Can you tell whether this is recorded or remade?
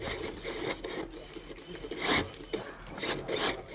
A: recorded